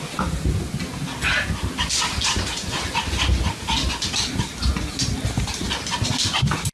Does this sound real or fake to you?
real